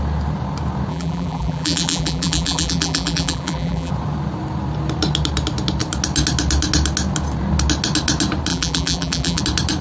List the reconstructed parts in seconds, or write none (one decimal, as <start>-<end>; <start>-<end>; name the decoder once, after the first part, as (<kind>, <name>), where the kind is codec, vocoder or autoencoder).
0.9-3.9 (vocoder, BigVGAN v2); 8.5-9.4